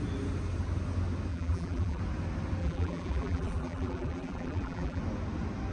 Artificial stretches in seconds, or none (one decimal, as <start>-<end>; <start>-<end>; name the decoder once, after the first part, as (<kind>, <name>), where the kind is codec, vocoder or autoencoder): 1.3-2.0 (vocoder, BigVGAN v2); 2.6-5.0